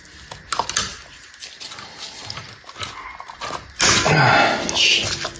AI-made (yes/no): no